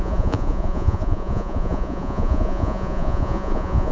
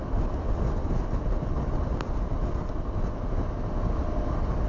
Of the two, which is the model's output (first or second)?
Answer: first